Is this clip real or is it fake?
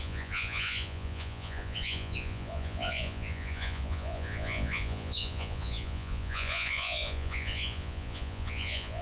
fake